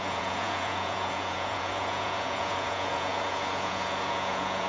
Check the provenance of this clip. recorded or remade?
remade